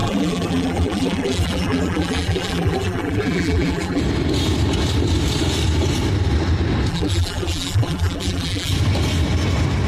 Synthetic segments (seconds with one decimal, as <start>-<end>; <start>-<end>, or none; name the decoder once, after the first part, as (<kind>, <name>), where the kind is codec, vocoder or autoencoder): 0.0-4.0 (vocoder, BigVGAN v2); 6.9-8.7